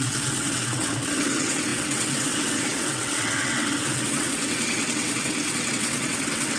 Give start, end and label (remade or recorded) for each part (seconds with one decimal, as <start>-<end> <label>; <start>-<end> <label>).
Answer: 0.0-6.6 remade